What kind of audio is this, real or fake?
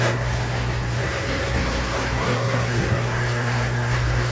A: fake